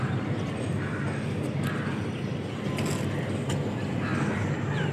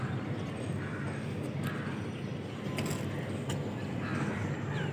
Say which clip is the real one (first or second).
second